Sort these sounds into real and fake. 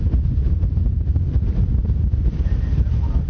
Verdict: fake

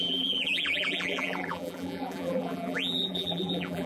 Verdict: fake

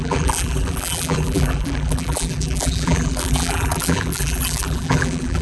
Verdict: fake